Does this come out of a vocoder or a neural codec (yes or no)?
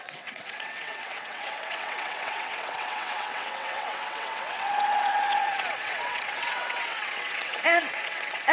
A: yes